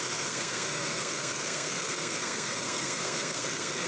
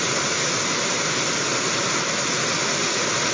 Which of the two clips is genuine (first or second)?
second